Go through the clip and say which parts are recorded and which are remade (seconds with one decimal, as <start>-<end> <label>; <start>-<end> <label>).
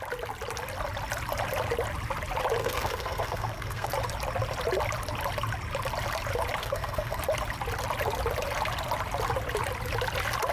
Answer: 0.0-2.6 recorded; 2.6-3.9 remade; 3.9-6.6 recorded; 6.6-7.2 remade; 7.2-10.5 recorded